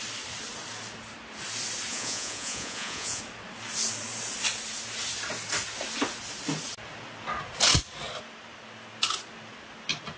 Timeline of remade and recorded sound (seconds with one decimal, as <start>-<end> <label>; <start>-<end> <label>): 0.0-1.9 recorded; 1.9-3.2 remade; 3.2-10.2 recorded